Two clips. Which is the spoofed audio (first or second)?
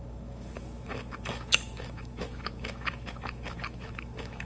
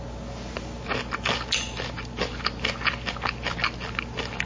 first